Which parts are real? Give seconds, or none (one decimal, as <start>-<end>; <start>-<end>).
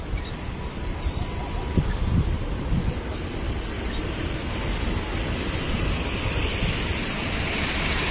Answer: 0.0-8.1